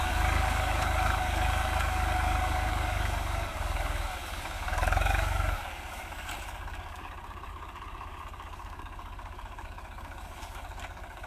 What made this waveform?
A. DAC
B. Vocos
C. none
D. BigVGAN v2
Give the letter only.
A